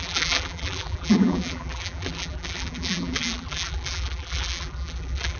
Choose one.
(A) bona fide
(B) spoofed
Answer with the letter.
B